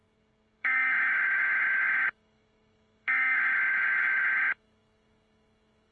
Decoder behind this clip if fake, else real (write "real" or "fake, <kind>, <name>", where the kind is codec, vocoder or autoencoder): fake, autoencoder, DAC-VAE